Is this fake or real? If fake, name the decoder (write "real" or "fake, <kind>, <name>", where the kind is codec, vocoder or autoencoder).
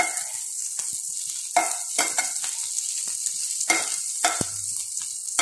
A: real